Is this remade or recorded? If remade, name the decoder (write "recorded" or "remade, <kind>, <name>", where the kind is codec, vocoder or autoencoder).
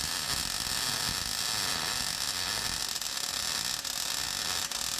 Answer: recorded